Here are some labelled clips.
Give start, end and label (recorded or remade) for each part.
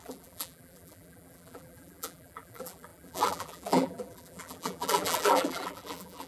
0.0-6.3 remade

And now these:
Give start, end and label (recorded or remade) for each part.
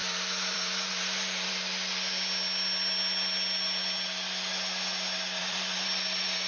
0.0-1.5 remade; 1.5-5.4 recorded; 5.4-6.5 remade